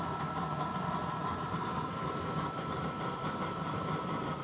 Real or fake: fake